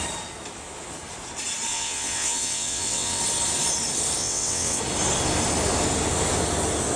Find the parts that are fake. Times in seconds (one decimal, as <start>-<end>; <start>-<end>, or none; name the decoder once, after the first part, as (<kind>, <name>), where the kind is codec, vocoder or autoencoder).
1.7-3.2 (vocoder, WaveNeXt); 4.2-4.8